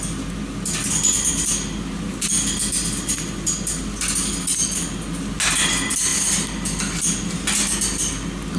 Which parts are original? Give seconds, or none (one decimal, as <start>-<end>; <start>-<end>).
0.0-8.6